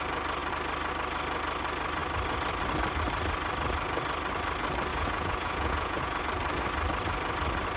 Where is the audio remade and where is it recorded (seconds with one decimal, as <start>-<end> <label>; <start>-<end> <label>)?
0.0-4.9 recorded; 4.9-6.2 remade; 6.2-7.8 recorded